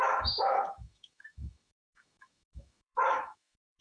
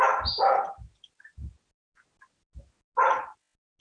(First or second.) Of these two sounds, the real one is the second